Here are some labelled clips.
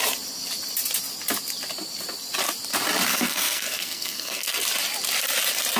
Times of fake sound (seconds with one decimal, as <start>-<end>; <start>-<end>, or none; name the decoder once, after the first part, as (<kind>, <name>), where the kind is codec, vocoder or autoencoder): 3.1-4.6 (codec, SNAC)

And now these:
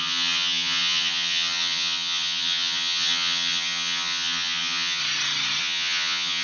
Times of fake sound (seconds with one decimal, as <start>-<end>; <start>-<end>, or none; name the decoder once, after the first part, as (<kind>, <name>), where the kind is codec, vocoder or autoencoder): 0.0-5.0 (vocoder, HiFi-GAN); 5.6-6.4

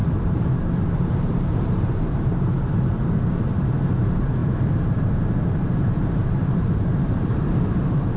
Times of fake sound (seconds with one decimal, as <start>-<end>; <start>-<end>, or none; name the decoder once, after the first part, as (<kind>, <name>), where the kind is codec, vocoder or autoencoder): 0.0-8.2 (vocoder, BigVGAN v2)